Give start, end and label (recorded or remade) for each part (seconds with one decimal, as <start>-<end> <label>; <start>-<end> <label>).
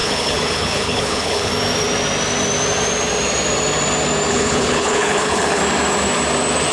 0.0-1.5 remade; 1.5-4.3 recorded; 4.3-5.6 remade; 5.6-6.7 recorded